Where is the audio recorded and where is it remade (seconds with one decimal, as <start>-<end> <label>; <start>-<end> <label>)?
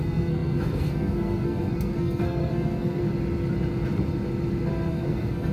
0.0-3.0 remade; 3.0-4.9 recorded; 4.9-5.5 remade